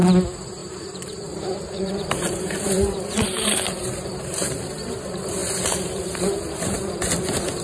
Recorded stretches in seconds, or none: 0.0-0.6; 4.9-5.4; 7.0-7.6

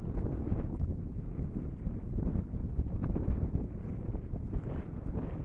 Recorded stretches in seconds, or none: 0.0-5.4

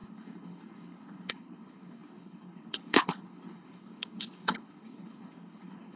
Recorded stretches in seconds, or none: none

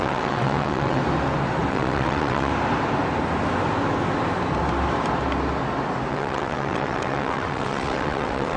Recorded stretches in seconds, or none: 1.0-1.7; 2.5-6.1

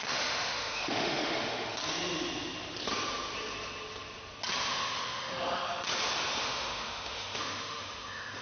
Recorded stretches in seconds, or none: 1.8-4.7; 5.8-6.4

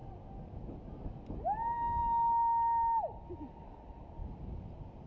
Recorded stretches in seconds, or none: 0.0-5.1

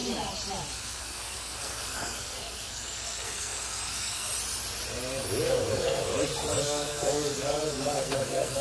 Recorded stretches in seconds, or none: 0.0-0.7; 4.3-5.5; 6.1-6.6